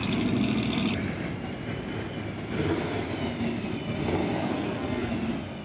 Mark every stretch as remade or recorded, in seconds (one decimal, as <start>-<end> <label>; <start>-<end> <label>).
0.0-4.4 recorded; 4.4-5.1 remade; 5.1-5.6 recorded